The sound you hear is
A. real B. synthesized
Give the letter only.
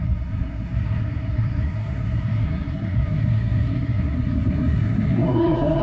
B